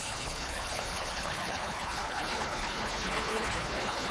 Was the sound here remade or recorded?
remade